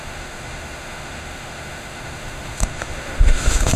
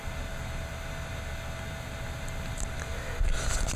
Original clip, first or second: second